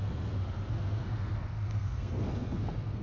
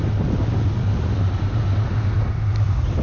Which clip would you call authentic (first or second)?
second